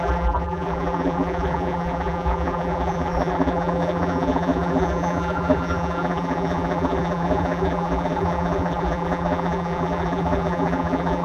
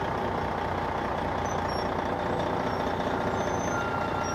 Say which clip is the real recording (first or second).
second